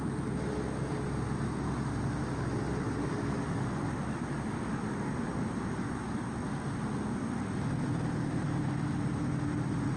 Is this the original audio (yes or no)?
yes